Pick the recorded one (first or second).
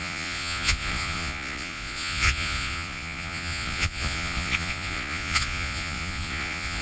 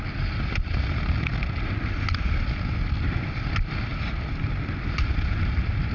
second